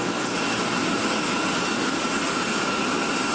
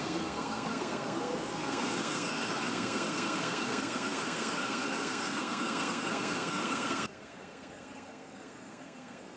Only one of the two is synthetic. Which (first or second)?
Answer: second